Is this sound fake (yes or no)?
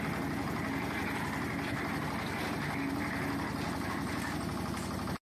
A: no